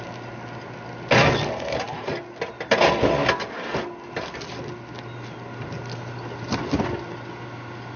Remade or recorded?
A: recorded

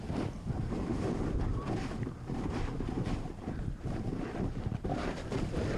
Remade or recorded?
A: remade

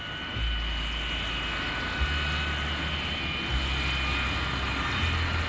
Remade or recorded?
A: recorded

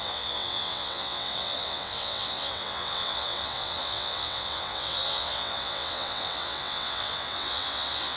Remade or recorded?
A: remade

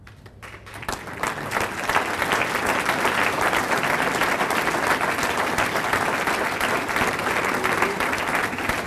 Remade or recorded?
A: recorded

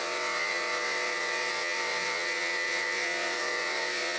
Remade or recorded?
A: remade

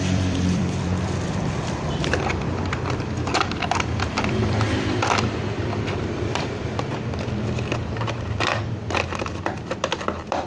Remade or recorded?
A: remade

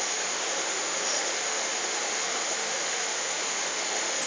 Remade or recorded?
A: remade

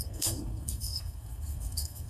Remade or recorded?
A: remade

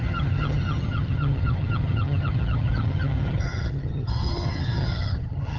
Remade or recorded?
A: remade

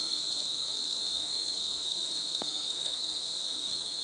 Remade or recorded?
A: remade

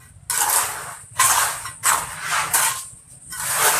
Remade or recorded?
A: recorded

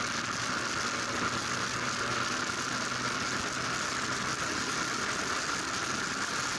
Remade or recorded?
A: recorded